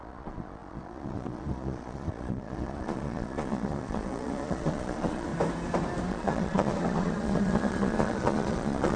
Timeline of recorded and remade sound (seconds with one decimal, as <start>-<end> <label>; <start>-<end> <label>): 0.0-5.3 remade; 5.3-6.1 recorded; 6.1-9.0 remade